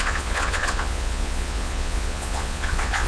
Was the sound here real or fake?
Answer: fake